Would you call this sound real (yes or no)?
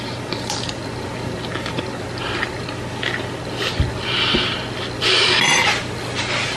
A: yes